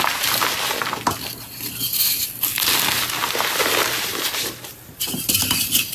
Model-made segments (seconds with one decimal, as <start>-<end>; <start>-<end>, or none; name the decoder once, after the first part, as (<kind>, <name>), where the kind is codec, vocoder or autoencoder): none